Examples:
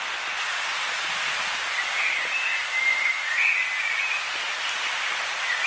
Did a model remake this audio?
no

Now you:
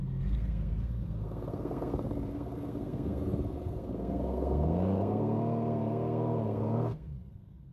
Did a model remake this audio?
yes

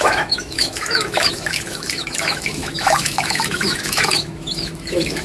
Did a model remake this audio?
yes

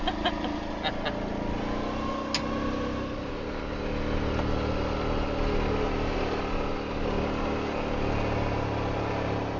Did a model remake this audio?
no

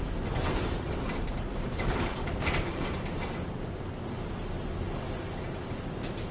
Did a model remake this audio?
no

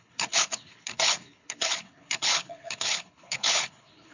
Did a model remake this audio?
yes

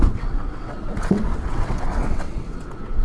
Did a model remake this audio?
yes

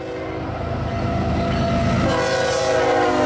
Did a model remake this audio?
no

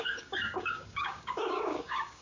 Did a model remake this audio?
yes